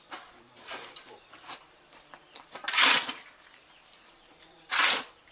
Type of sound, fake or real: fake